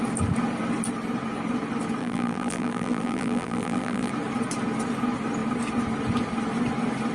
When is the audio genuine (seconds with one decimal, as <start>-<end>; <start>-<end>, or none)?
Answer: 0.0-2.0; 4.1-7.1

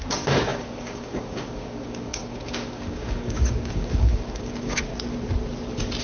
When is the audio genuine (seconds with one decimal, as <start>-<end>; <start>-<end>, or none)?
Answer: 4.9-6.0

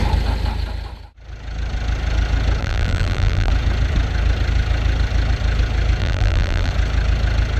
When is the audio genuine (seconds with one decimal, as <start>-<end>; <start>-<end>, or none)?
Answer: 0.0-2.6; 3.5-6.0; 6.7-7.6

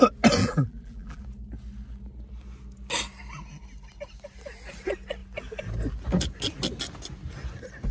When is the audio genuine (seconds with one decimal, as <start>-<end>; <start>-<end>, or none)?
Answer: 0.0-0.4; 1.2-7.9